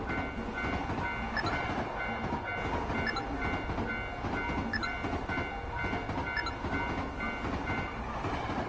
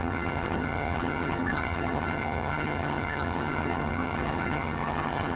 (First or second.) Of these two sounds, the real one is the first